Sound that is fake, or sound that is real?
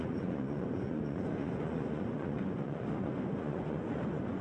fake